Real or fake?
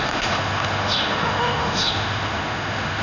fake